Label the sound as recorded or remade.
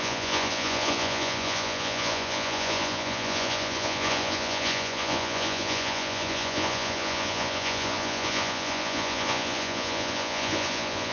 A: remade